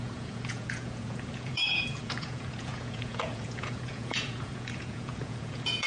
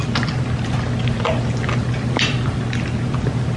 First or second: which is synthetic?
first